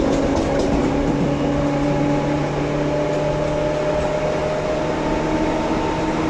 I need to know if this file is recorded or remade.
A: recorded